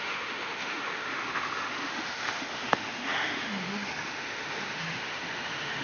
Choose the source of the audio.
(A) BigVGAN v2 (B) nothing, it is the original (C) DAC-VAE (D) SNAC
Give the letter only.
C